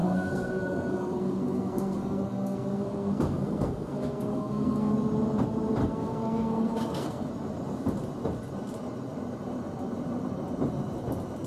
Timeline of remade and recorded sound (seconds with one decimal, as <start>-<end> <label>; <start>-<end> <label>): 0.0-4.9 remade; 4.9-5.8 recorded; 5.8-7.3 remade; 7.3-11.5 recorded

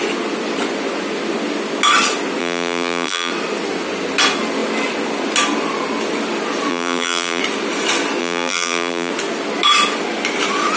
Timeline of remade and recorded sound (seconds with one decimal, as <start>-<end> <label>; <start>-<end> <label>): 0.0-2.4 recorded; 2.4-3.3 remade; 3.3-6.7 recorded; 6.7-7.4 remade; 7.4-8.2 recorded; 8.2-9.1 remade; 9.1-10.8 recorded

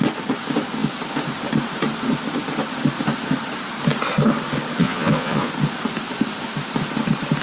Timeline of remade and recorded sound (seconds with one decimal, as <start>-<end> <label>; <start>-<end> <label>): 0.0-4.8 recorded; 4.8-5.5 remade; 5.5-7.4 recorded

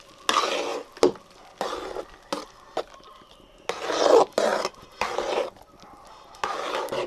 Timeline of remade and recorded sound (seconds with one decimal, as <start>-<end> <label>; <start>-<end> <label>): 0.0-7.1 recorded

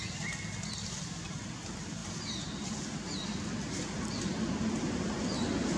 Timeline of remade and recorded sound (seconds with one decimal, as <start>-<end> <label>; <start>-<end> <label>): 0.0-5.8 recorded

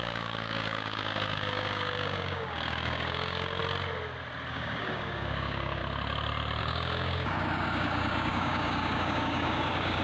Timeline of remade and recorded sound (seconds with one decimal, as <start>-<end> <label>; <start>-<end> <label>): 0.0-3.6 remade; 3.6-4.5 recorded; 4.5-5.8 remade; 5.8-6.6 recorded; 6.6-10.0 remade

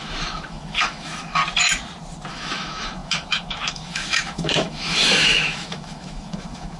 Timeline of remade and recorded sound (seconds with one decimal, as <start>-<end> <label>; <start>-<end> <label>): 0.0-1.4 remade; 1.4-2.3 recorded; 2.3-6.8 remade

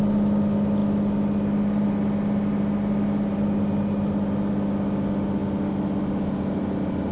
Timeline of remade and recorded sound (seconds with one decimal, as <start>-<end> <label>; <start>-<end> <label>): 0.0-7.1 recorded